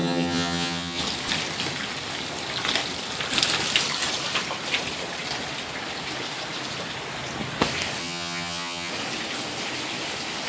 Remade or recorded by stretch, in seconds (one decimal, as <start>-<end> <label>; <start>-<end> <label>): 0.0-1.0 remade; 1.0-8.0 recorded; 8.0-8.9 remade; 8.9-10.5 recorded

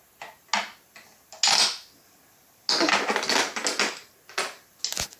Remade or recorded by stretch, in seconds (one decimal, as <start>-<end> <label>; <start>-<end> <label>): 0.0-5.2 recorded

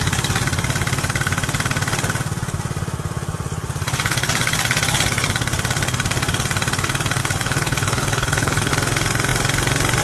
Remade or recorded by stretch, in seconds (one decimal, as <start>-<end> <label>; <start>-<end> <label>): 0.0-7.2 recorded; 7.2-8.7 remade; 8.7-10.0 recorded